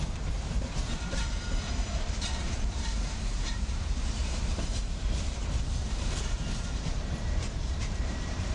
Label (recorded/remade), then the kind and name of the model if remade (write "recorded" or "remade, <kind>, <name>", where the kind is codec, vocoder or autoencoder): remade, vocoder, BigVGAN v2